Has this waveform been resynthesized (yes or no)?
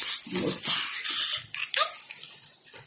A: no